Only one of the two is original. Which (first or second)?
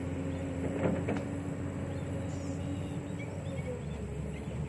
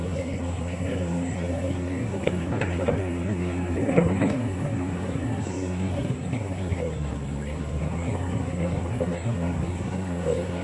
first